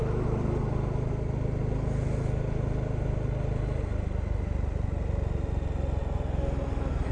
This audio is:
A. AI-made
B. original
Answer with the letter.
B